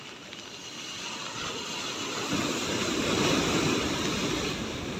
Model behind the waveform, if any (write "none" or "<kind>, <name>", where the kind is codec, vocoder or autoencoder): none